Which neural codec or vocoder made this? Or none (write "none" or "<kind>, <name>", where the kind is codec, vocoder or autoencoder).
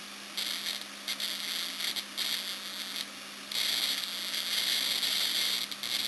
none